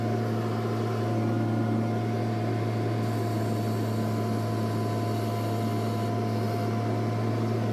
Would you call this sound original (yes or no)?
yes